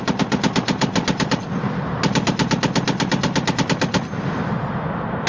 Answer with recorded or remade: recorded